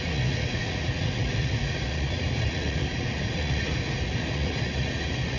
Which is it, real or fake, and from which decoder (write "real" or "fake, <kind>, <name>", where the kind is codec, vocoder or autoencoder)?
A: fake, vocoder, Vocos